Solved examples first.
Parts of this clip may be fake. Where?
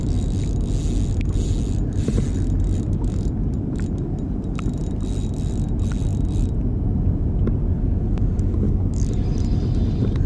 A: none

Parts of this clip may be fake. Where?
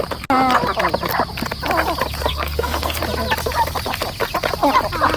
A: 2.3-3.0 (codec, SNAC)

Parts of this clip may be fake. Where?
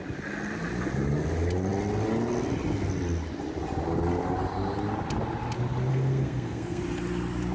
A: 5.9-6.8 (codec, SNAC)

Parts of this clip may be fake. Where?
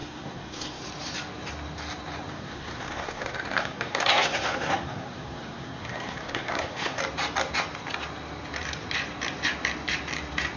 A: 0.0-0.8 (codec, SNAC); 2.3-7.0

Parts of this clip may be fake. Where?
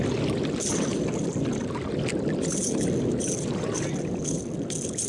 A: none